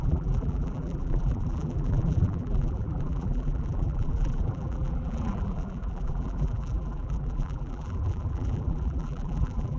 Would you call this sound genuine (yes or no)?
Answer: no